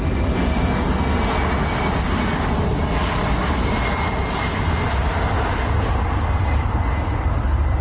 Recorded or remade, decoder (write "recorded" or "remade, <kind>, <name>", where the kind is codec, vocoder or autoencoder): recorded